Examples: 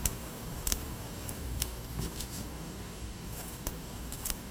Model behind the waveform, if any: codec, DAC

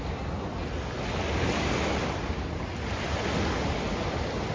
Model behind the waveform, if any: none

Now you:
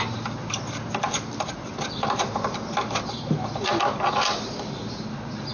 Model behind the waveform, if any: none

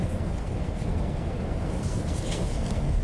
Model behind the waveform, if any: codec, SNAC